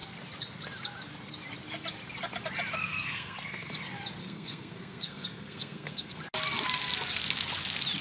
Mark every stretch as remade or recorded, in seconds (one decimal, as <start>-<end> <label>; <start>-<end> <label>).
0.0-2.8 recorded; 2.8-3.7 remade; 3.7-4.2 recorded; 4.2-6.2 remade; 6.2-8.0 recorded